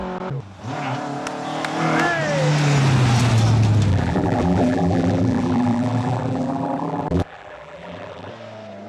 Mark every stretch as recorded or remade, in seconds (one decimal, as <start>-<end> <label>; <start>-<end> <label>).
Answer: 0.0-3.9 recorded; 3.9-8.3 remade; 8.3-8.9 recorded